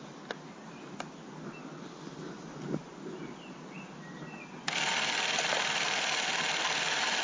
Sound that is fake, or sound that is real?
real